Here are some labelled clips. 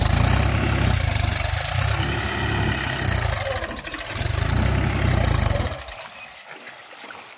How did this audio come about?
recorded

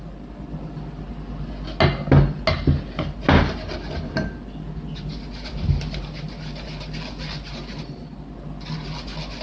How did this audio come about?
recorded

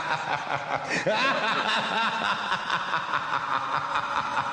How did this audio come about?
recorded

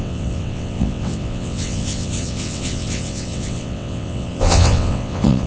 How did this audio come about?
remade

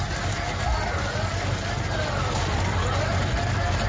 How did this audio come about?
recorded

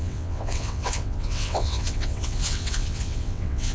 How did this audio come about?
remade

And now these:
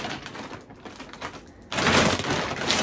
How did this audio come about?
recorded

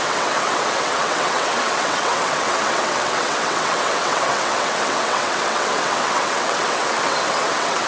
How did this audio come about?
remade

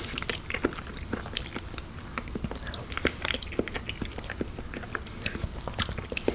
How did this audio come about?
recorded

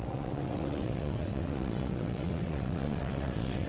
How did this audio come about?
remade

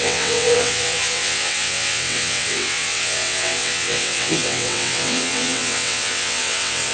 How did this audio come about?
remade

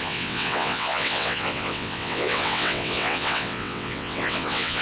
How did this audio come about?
remade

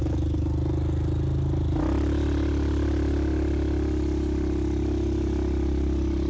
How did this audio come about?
recorded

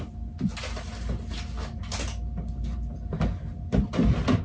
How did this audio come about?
recorded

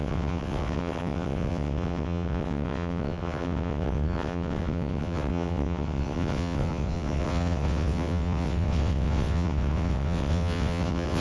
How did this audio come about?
remade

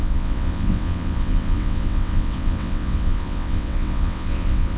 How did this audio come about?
remade